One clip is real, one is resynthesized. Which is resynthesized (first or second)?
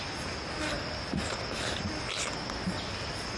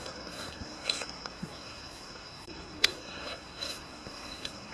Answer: second